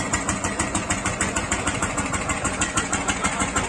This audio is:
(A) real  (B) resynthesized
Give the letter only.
B